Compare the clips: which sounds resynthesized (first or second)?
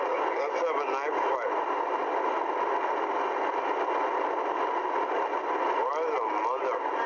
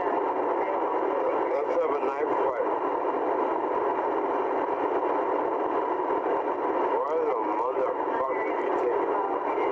second